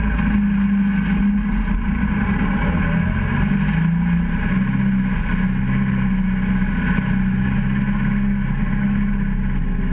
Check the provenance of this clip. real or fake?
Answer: real